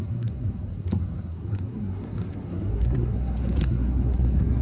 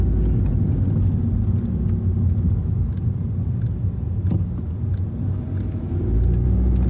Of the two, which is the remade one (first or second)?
first